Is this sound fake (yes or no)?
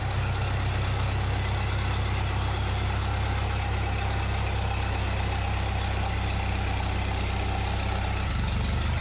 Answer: no